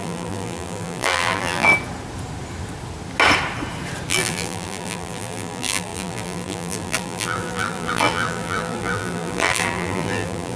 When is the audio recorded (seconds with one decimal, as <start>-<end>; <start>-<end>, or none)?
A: 1.7-4.1